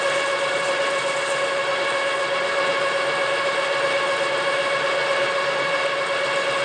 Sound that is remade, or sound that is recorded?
recorded